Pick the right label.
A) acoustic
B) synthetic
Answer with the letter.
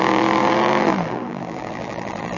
B